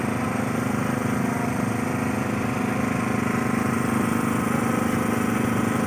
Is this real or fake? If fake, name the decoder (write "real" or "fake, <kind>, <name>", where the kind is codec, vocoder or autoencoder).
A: real